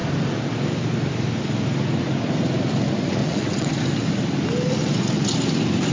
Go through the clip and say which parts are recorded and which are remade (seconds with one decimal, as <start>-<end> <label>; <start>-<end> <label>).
0.0-3.2 recorded; 3.2-3.7 remade; 3.7-5.9 recorded